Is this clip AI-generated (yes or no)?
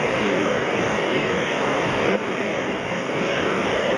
yes